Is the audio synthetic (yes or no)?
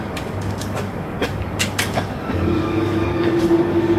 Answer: yes